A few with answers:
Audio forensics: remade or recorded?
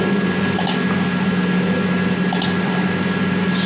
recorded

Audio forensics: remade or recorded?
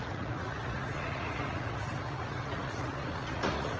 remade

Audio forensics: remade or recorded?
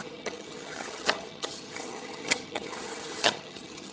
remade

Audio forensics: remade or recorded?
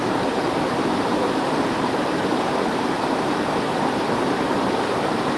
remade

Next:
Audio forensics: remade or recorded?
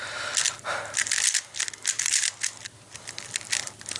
recorded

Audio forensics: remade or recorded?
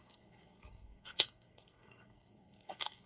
remade